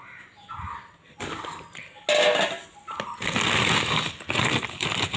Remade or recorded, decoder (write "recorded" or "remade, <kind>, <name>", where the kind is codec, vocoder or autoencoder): recorded